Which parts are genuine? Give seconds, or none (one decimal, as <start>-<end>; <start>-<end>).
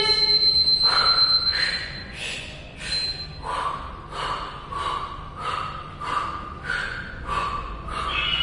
0.0-1.5; 2.8-6.8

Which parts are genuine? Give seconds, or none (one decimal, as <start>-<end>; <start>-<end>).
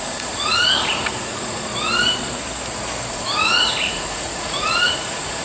1.7-3.1